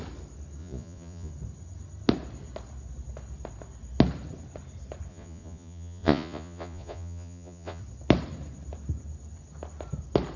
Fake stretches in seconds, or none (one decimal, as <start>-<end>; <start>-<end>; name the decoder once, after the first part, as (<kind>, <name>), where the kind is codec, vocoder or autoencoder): 0.6-1.3 (vocoder, Vocos); 5.1-7.8